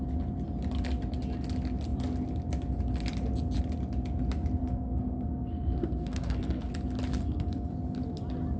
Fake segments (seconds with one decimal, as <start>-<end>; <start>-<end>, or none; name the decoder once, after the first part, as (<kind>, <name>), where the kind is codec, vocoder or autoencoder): 4.6-6.7 (codec, SNAC); 7.2-7.7